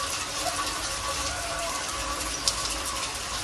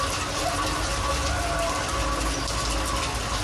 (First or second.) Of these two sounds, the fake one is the first